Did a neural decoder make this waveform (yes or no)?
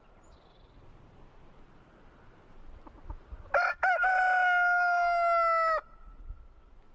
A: no